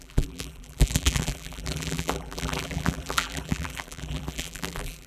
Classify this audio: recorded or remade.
remade